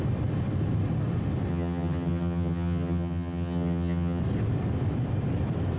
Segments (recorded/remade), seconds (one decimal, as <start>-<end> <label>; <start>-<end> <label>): 0.0-1.5 recorded; 1.5-4.2 remade; 4.2-5.8 recorded